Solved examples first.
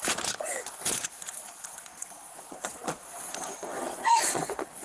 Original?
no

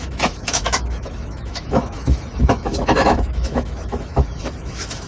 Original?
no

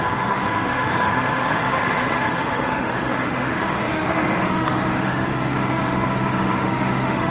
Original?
no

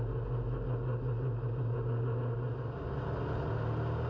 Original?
yes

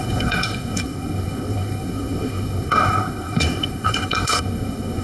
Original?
no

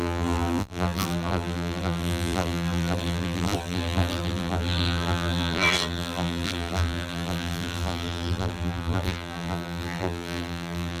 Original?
no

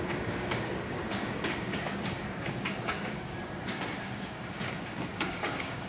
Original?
no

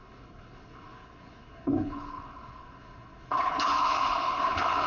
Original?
no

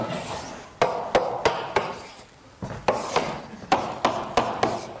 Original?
yes